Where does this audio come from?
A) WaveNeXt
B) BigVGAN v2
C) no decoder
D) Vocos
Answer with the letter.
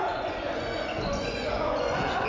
D